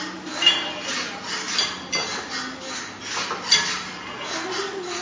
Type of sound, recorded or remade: recorded